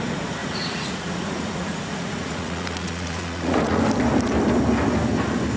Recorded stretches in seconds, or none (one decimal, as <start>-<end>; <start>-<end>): 0.0-0.4; 3.8-5.6